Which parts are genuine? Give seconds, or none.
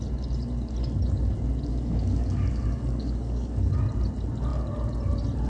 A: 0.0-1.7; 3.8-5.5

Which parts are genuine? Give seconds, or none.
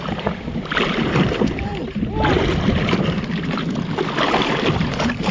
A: 1.7-3.3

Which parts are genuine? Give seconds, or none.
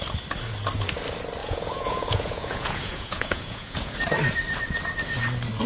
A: 0.0-1.4; 4.0-5.7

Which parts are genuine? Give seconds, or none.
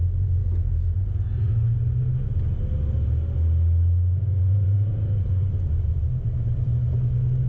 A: 0.4-4.4; 6.7-7.5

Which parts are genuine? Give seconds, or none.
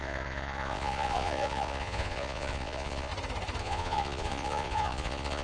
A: 3.1-3.6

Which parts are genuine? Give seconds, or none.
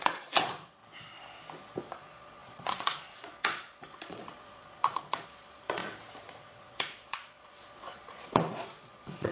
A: 0.8-1.8; 5.8-6.4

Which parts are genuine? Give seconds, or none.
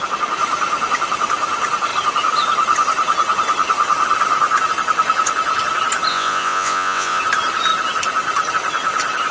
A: 0.0-6.1; 7.2-9.3